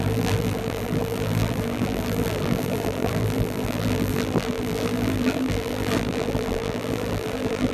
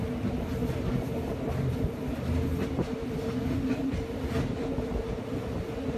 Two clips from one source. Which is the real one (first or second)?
second